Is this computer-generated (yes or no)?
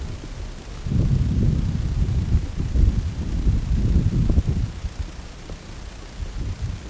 no